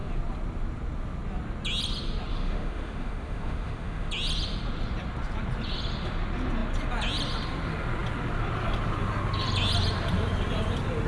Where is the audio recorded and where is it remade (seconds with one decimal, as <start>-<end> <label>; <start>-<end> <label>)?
0.0-2.3 recorded; 2.3-4.1 remade; 4.1-11.1 recorded